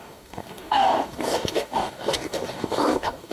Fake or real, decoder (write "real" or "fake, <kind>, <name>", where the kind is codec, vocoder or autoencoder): fake, codec, DAC